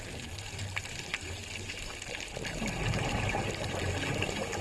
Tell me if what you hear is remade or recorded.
recorded